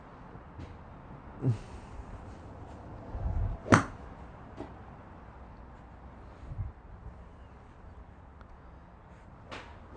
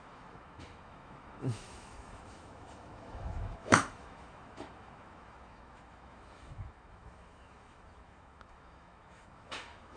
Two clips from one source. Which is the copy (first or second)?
second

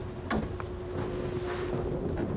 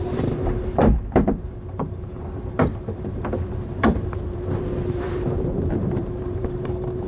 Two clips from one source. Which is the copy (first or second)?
second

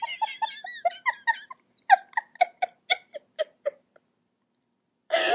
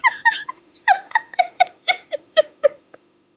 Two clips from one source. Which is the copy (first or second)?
second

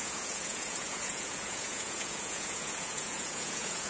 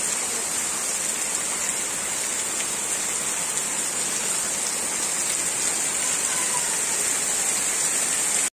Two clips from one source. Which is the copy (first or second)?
first